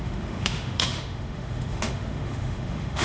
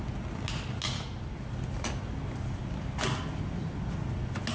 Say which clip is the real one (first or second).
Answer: second